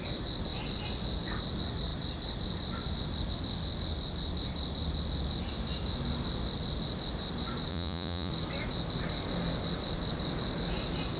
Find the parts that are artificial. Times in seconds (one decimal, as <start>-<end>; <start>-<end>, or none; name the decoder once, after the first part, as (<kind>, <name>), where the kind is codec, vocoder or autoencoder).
7.7-8.3 (vocoder, Vocos)